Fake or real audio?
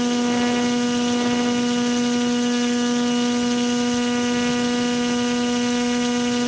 real